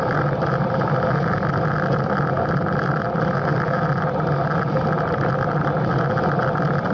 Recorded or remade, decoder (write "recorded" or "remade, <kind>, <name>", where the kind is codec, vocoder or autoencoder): recorded